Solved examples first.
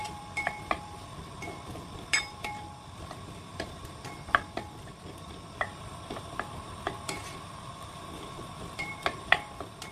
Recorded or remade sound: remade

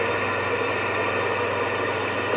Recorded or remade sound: recorded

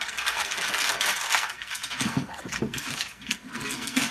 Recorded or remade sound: remade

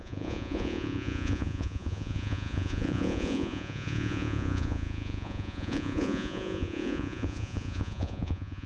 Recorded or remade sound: remade